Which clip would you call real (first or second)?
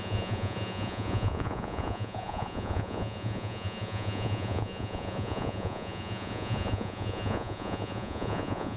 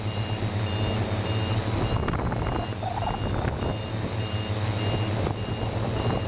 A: second